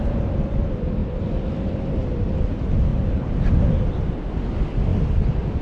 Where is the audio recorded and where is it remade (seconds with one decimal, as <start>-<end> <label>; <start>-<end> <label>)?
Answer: 0.0-2.9 recorded; 2.9-3.5 remade; 3.5-5.6 recorded